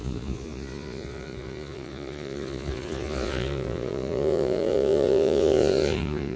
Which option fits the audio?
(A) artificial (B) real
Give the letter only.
A